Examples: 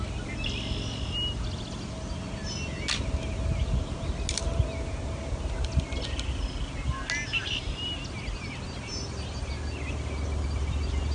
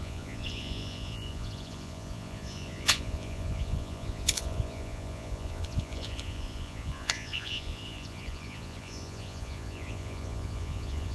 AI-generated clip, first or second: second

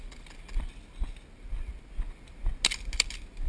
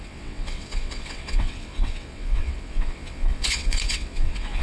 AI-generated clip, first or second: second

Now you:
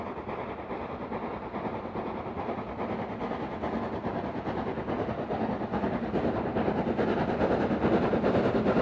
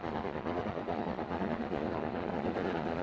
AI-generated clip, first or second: second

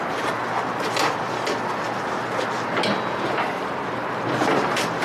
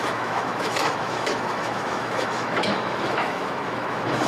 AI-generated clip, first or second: second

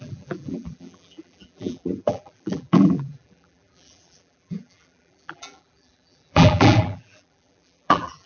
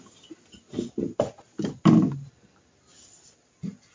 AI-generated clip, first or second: first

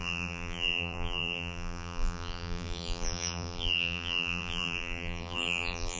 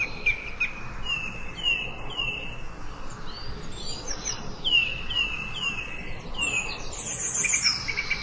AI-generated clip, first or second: first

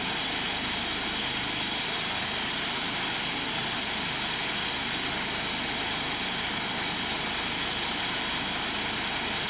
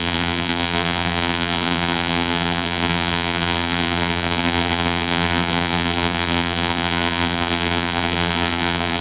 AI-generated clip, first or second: second